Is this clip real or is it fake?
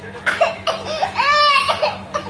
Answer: fake